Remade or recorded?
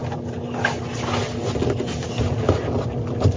recorded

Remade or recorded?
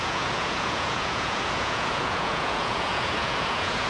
remade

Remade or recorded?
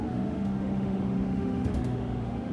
remade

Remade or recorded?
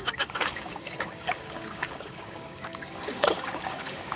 remade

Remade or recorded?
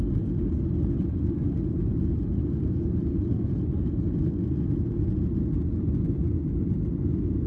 recorded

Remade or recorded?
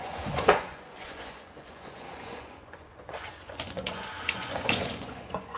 remade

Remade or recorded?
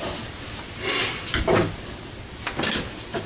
recorded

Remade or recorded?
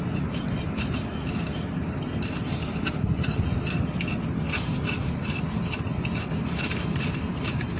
remade